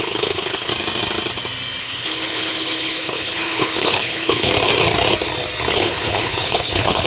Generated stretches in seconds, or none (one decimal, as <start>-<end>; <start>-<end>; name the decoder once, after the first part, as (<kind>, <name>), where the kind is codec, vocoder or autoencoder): 0.0-0.7 (codec, HILCodec); 1.8-4.5; 5.7-7.1